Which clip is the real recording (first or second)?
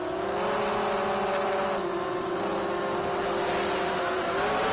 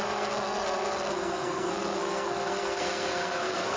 first